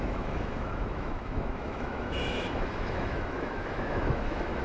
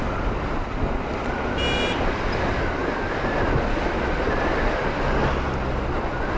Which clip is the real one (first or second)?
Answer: second